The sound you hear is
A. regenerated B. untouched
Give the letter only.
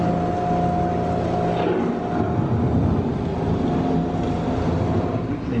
B